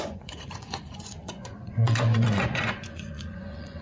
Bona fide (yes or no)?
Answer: no